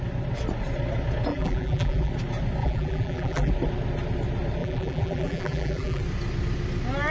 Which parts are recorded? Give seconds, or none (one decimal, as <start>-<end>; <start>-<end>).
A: 0.0-1.3; 2.1-2.6; 3.5-4.6; 6.0-7.1